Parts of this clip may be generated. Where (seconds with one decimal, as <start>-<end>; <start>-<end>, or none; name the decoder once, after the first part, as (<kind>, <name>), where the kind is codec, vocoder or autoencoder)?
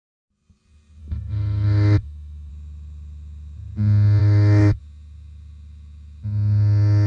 1.0-2.5 (autoencoder, DAC-VAE); 4.2-4.8